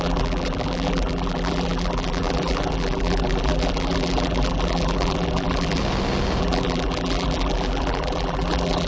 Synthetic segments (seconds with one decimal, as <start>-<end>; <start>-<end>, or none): 0.0-5.8; 6.4-8.9